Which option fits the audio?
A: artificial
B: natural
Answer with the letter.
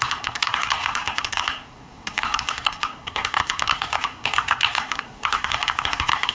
A